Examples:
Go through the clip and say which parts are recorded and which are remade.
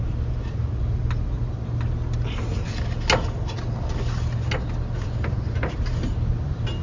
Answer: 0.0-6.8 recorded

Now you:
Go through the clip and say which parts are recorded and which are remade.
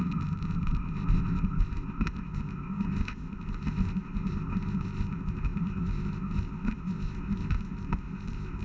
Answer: 0.0-8.6 remade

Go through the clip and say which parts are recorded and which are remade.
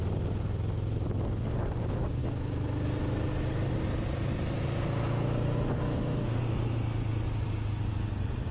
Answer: 0.0-8.5 recorded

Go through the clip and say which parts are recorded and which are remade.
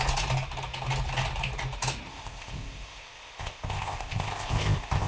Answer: 0.0-2.1 recorded; 2.1-5.1 remade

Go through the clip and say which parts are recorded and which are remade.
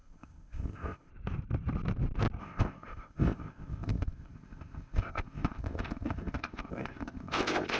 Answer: 0.0-1.1 remade; 1.1-2.4 recorded; 2.4-7.8 remade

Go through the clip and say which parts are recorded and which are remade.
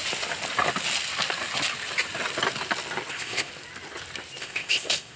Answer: 0.0-3.1 recorded; 3.1-3.5 remade; 3.5-4.4 recorded; 4.4-5.2 remade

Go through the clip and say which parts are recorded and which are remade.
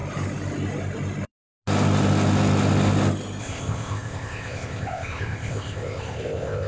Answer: 0.0-3.4 recorded; 3.4-6.7 remade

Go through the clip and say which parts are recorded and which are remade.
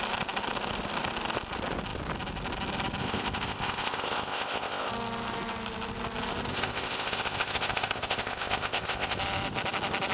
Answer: 0.0-3.0 recorded; 3.0-4.9 remade; 4.9-6.5 recorded; 6.5-9.2 remade; 9.2-10.1 recorded